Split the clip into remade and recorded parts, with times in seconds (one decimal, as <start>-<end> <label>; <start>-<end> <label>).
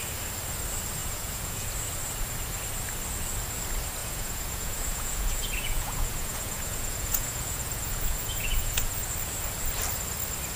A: 0.0-1.0 recorded; 1.0-1.7 remade; 1.7-4.0 recorded; 4.0-9.1 remade; 9.1-10.6 recorded